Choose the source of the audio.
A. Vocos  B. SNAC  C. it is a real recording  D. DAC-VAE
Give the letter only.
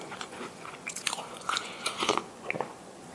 A